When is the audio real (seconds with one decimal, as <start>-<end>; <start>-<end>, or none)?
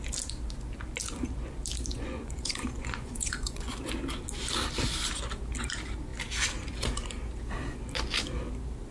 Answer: 0.0-1.9; 3.7-8.9